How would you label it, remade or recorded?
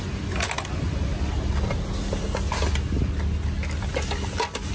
recorded